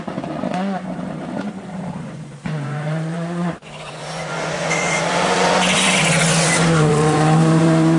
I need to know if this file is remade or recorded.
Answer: remade